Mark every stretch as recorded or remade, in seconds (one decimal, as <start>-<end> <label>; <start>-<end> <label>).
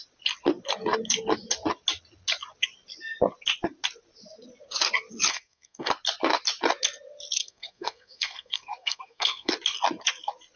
0.0-5.3 recorded; 5.3-5.9 remade; 5.9-7.4 recorded; 7.4-9.5 remade; 9.5-10.6 recorded